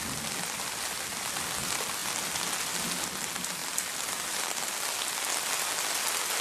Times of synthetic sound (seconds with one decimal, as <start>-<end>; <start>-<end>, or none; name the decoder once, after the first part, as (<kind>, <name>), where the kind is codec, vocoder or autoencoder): none